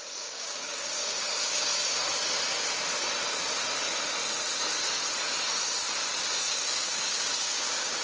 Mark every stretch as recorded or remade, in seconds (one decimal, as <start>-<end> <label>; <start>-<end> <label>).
0.0-1.7 remade; 1.7-6.5 recorded; 6.5-8.0 remade